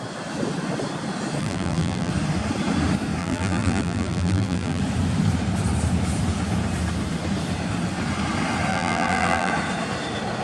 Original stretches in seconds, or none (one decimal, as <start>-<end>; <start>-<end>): 0.0-1.4; 2.1-3.2; 4.8-8.7; 9.5-10.4